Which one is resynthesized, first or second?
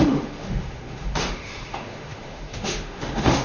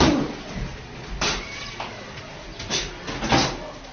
first